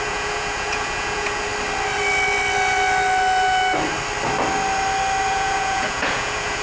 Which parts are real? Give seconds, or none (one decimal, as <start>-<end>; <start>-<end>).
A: 1.5-5.3